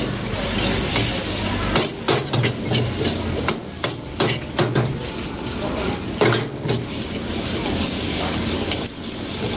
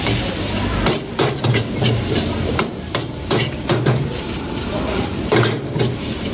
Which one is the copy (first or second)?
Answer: second